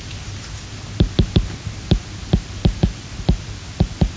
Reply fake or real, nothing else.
real